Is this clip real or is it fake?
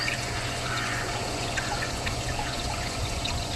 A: fake